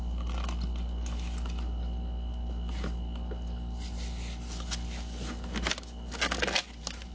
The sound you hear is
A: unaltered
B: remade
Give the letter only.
A